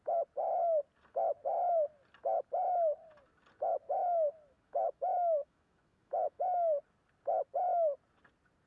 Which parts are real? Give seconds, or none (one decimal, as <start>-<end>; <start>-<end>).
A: 0.0-4.5; 6.4-8.7

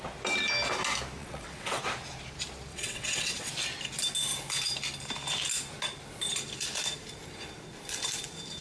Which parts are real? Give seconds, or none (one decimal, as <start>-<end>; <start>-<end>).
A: 0.0-1.2; 1.8-2.7; 3.5-8.6

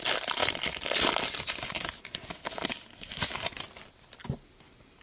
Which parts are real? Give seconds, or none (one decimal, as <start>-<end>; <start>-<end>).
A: 0.0-5.0

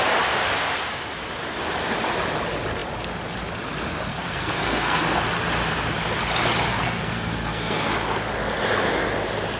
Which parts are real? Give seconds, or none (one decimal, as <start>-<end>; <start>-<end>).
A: 0.0-4.1; 5.0-6.7; 7.9-9.6

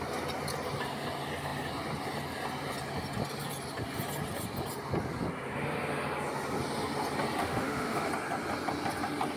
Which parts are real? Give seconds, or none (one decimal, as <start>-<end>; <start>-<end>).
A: 0.0-7.4; 8.1-9.4

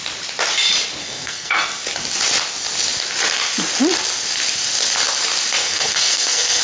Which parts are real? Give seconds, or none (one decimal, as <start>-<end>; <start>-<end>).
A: 0.0-1.0; 1.6-5.6

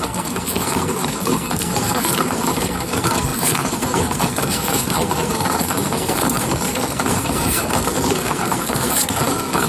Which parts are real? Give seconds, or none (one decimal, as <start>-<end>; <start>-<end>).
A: none